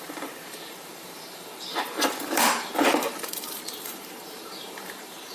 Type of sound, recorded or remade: remade